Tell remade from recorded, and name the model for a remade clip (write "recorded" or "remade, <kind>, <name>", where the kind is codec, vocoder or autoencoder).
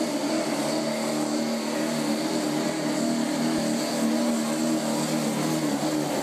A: recorded